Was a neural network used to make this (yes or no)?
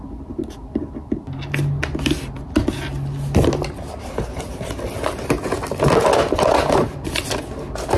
no